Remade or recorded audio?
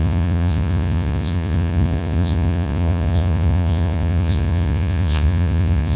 remade